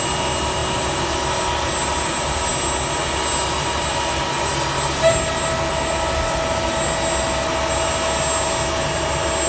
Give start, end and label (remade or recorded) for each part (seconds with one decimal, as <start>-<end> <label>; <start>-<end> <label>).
0.0-9.5 recorded